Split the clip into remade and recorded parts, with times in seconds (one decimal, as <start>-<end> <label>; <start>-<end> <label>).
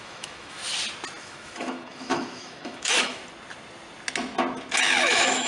0.0-0.6 remade; 0.6-1.2 recorded; 1.2-3.2 remade; 3.2-5.0 recorded; 5.0-5.5 remade